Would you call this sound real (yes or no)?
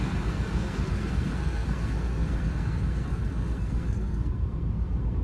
no